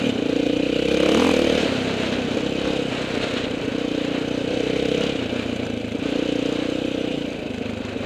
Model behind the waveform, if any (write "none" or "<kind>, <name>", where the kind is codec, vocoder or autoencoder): none